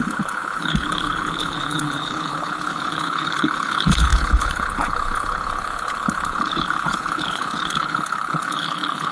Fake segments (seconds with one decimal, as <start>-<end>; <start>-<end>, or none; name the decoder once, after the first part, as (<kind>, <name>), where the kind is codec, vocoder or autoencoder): 0.0-9.1 (codec, HILCodec)